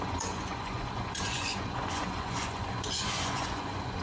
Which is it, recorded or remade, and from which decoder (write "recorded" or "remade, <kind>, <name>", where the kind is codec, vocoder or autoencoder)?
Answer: remade, vocoder, Vocos